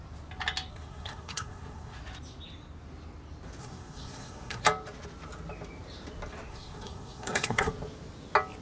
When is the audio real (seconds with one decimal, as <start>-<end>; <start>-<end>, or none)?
0.0-0.7; 2.0-3.6; 4.6-6.5; 7.7-8.6